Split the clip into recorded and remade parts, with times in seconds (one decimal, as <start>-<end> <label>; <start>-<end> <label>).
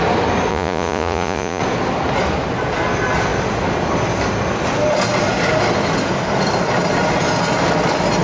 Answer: 0.0-0.5 recorded; 0.5-1.6 remade; 1.6-8.2 recorded